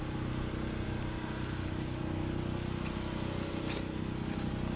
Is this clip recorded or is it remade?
recorded